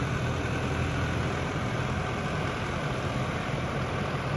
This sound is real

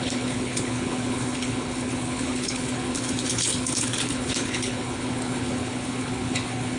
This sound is fake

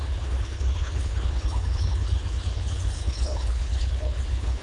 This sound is fake